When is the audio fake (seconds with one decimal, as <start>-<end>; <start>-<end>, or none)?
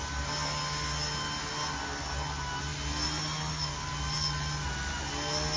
none